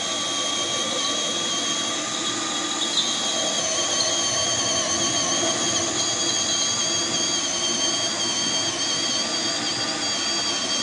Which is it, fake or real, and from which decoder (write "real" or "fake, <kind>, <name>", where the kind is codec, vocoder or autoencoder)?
real